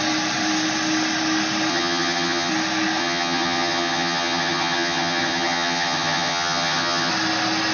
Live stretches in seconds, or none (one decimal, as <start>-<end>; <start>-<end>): 0.0-1.7; 2.5-3.0; 7.1-7.7